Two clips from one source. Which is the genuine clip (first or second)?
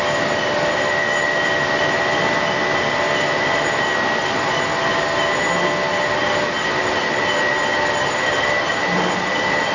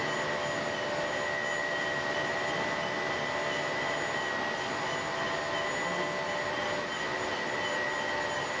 second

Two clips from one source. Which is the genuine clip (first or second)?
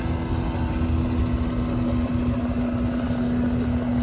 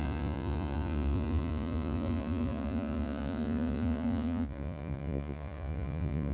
first